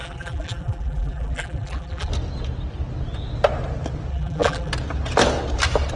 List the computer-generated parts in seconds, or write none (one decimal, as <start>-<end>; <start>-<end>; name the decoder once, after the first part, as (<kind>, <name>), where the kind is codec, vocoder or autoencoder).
0.0-2.1 (vocoder, BigVGAN v2); 4.1-4.7